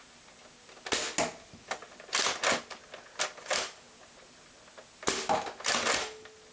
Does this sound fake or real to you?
real